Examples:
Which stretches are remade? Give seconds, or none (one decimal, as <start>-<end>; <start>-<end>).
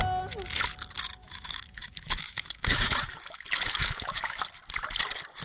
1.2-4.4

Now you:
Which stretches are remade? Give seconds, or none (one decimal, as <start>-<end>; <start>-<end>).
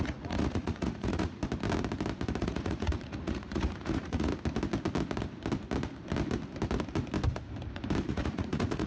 0.0-1.4; 2.4-4.3; 8.1-8.9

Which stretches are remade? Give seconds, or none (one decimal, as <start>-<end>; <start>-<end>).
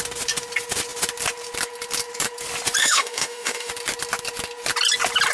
2.8-3.7